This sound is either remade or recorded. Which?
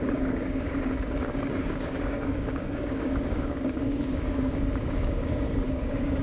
remade